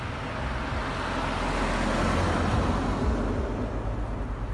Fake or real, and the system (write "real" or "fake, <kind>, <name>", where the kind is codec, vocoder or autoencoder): real